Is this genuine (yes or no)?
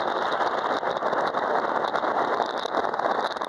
yes